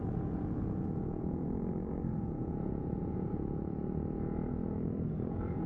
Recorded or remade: remade